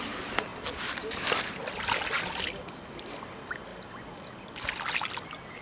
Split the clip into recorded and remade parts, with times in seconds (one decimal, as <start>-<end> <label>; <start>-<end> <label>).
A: 0.0-5.6 recorded